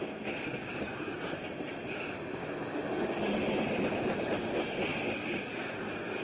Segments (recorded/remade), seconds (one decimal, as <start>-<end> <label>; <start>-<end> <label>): 0.0-0.6 recorded; 0.6-1.2 remade; 1.2-4.9 recorded; 4.9-6.2 remade